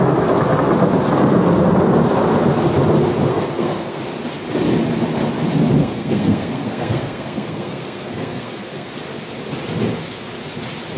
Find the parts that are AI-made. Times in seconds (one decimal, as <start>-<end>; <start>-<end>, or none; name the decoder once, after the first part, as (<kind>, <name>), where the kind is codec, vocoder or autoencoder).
3.3-4.0 (codec, SNAC); 5.8-8.9